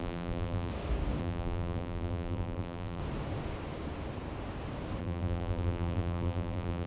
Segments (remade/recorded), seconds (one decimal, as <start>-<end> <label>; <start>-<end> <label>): 0.0-0.7 remade; 0.7-1.2 recorded; 1.2-3.0 remade; 3.0-5.0 recorded; 5.0-6.9 remade